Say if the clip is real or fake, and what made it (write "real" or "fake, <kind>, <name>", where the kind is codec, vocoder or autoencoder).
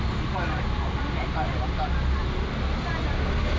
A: real